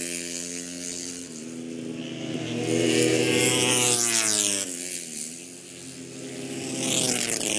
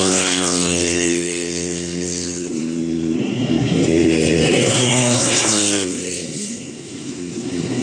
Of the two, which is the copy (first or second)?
second